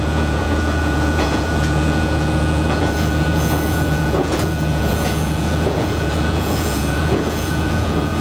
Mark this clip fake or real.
fake